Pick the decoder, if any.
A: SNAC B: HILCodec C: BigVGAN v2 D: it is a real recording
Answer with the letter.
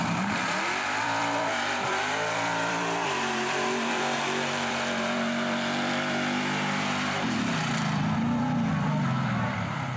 C